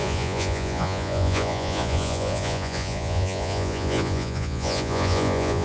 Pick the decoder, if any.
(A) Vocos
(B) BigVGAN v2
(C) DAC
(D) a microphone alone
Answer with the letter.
A